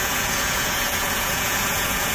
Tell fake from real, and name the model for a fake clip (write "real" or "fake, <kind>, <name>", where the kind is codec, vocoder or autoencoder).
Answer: fake, vocoder, Vocos